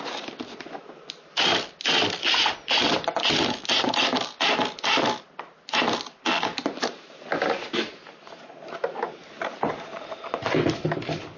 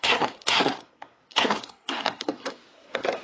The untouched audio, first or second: first